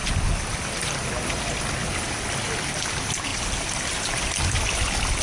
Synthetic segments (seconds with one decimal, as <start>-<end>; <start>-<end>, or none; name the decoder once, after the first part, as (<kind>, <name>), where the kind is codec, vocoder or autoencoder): 3.3-4.0 (vocoder, BigVGAN v2)